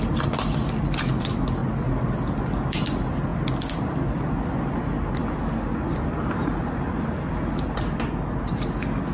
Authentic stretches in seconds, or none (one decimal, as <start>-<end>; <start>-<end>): 0.0-9.1